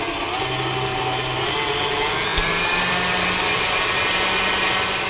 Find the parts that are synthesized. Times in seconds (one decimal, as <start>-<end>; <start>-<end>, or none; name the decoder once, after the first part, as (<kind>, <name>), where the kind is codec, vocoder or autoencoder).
none